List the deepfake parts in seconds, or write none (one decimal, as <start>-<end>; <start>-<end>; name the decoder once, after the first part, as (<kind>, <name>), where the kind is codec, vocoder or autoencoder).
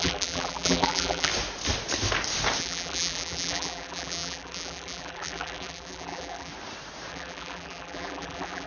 0.0-1.3 (vocoder, BigVGAN v2); 2.6-6.5; 7.1-8.7